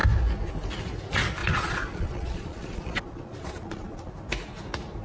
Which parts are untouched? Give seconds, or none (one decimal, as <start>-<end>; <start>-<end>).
0.0-1.4; 4.1-5.0